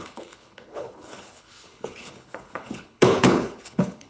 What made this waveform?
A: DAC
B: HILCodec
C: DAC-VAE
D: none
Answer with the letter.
B